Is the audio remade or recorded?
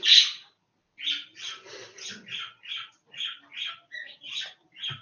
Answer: recorded